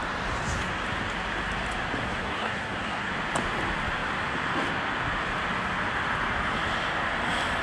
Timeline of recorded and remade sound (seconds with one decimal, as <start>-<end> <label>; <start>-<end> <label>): 0.0-2.0 recorded; 2.0-3.1 remade; 3.1-7.6 recorded